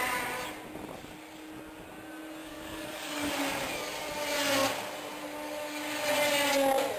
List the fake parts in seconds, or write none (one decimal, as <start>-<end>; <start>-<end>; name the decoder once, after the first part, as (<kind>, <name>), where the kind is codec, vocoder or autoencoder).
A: 2.4-3.3 (codec, DAC)